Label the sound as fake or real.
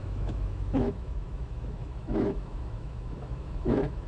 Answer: fake